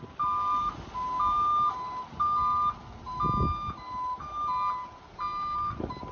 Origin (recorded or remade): recorded